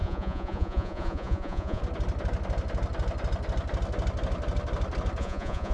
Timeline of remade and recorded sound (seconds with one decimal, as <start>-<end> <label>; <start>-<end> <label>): 0.0-1.8 remade; 1.8-5.2 recorded; 5.2-5.7 remade